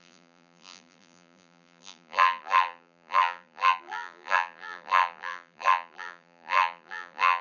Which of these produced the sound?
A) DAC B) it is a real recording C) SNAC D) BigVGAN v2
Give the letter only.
D